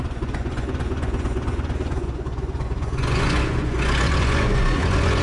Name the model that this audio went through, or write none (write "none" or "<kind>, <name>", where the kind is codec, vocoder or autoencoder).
vocoder, Vocos